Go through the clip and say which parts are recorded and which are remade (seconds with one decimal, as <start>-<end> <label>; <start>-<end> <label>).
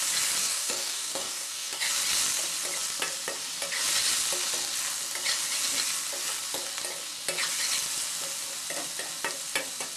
0.0-0.4 recorded; 0.4-1.9 remade; 1.9-10.0 recorded